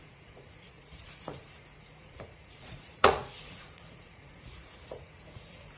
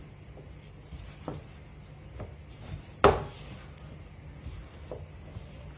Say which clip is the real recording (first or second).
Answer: second